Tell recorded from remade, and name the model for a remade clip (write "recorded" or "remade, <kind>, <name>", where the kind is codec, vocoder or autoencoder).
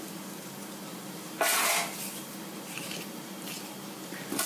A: remade, vocoder, BigVGAN v2